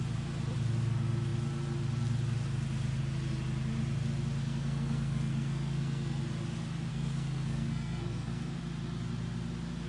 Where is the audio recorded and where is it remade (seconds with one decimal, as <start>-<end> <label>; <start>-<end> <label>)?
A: 0.0-4.4 recorded; 4.4-6.2 remade; 6.2-6.9 recorded; 6.9-8.6 remade; 8.6-9.9 recorded